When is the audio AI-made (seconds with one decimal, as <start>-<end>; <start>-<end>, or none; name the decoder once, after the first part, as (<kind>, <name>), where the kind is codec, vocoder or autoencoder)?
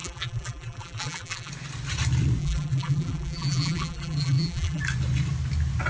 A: 0.0-1.5 (vocoder, BigVGAN v2); 2.4-4.8